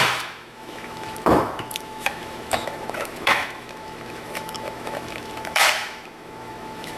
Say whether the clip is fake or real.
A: fake